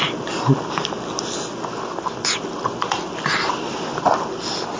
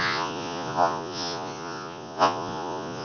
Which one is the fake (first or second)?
second